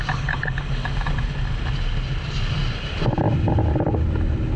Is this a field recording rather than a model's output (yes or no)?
yes